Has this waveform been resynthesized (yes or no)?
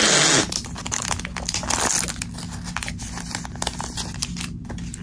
no